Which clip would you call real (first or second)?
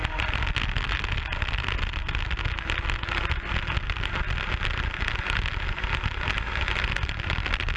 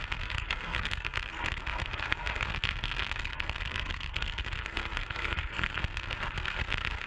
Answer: first